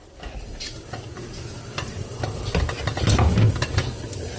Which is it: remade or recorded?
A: recorded